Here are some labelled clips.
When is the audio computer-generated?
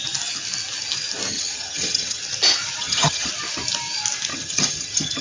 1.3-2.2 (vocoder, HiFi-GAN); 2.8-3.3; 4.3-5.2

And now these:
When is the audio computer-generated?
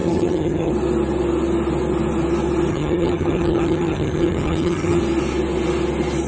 0.0-0.7 (vocoder, HiFi-GAN); 2.7-5.0